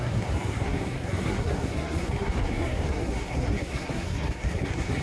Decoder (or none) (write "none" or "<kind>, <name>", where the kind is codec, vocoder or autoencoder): codec, SNAC